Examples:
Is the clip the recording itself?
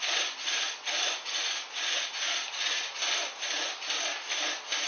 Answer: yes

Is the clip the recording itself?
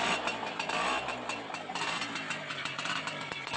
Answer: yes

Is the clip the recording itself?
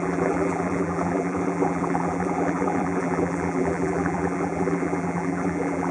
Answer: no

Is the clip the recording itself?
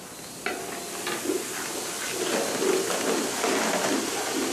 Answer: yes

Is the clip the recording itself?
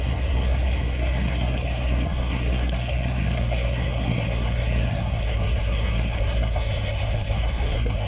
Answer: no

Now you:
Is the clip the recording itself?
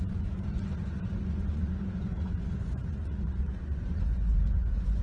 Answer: no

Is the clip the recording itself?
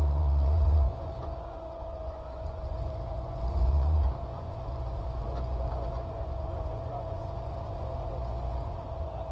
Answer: no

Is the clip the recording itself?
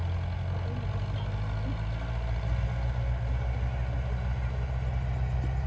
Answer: yes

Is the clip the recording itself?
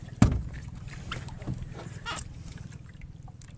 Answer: yes